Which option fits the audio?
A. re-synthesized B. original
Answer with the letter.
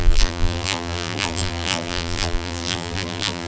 A